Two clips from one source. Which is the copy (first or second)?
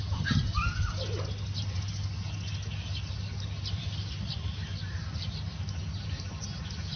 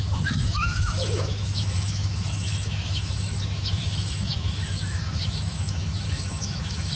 second